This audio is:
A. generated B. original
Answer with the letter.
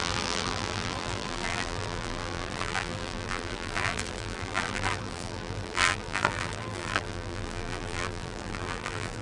A